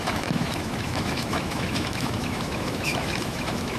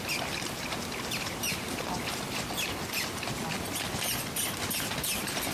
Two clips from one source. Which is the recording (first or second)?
second